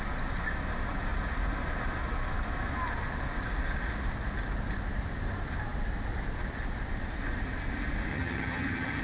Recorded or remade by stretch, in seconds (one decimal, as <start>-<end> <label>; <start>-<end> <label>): 0.0-8.1 recorded; 8.1-9.0 remade